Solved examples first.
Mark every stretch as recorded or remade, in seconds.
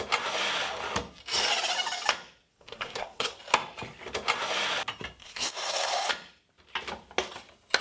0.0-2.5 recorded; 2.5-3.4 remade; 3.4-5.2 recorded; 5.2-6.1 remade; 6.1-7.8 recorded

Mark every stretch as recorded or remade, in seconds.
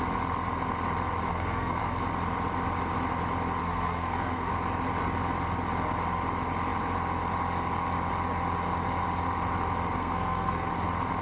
0.0-1.3 recorded; 1.3-2.0 remade; 2.0-3.6 recorded; 3.6-4.5 remade; 4.5-10.0 recorded; 10.0-10.7 remade; 10.7-11.2 recorded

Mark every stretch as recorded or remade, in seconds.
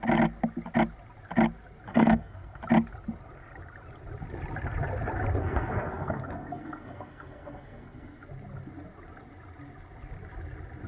0.0-1.9 recorded; 1.9-2.6 remade; 2.6-5.4 recorded; 5.4-8.2 remade; 8.2-10.9 recorded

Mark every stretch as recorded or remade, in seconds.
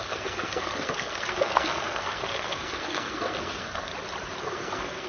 0.0-3.9 remade; 3.9-4.4 recorded; 4.4-5.1 remade